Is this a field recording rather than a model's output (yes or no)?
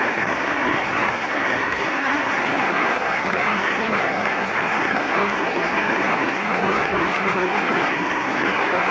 no